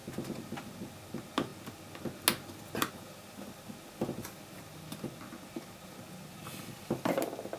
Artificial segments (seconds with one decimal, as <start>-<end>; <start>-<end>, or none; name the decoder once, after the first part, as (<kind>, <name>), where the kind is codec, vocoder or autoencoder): none